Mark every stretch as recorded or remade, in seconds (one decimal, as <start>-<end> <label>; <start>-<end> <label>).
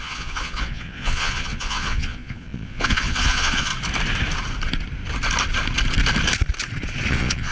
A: 0.0-3.7 remade; 3.7-7.1 recorded; 7.1-7.5 remade